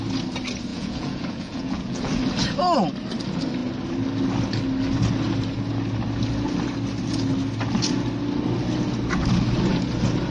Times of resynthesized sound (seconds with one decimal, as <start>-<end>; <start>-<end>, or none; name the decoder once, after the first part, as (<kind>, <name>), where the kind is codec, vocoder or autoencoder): 0.7-2.0 (vocoder, Vocos)